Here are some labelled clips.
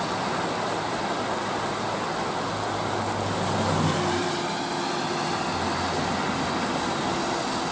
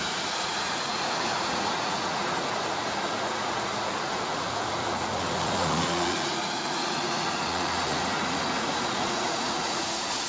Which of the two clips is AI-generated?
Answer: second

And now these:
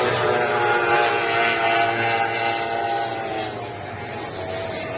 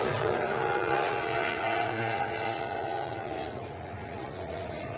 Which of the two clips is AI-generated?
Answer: second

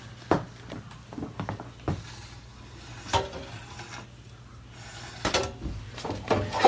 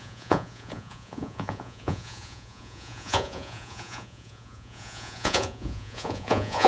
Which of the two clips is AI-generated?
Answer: second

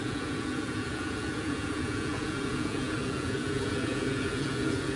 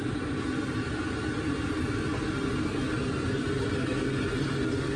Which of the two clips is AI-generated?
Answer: first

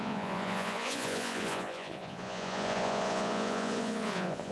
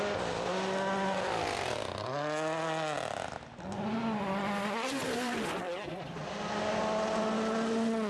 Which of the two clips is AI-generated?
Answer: first